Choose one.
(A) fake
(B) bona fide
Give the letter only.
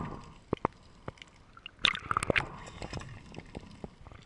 B